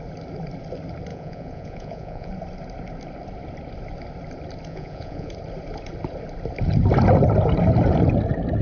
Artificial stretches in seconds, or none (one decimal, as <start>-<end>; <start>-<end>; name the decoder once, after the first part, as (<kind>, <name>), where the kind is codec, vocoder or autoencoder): 1.1-2.3 (vocoder, Vocos); 4.7-5.3